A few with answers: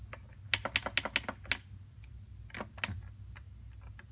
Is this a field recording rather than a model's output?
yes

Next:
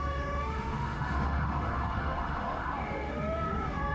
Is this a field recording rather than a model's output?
no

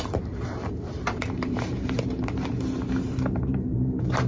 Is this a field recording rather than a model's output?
no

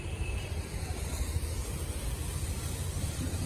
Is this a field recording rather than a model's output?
yes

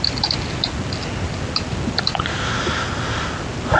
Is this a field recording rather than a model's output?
yes